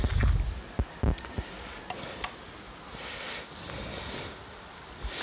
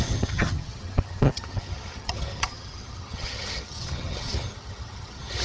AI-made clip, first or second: second